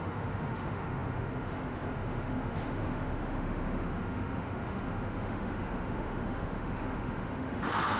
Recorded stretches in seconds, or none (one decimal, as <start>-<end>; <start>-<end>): none